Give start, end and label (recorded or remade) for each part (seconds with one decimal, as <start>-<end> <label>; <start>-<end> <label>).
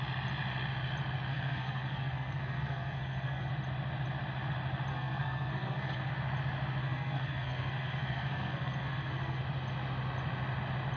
0.0-1.3 recorded; 1.3-3.5 remade; 3.5-4.9 recorded; 4.9-6.1 remade; 6.1-6.8 recorded; 6.8-9.4 remade; 9.4-11.0 recorded